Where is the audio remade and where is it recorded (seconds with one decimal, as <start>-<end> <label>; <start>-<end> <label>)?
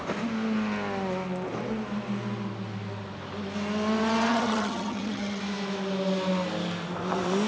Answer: 0.0-4.3 recorded; 4.3-5.4 remade; 5.4-7.5 recorded